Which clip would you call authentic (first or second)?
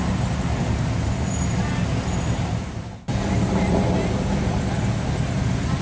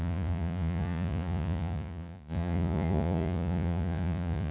first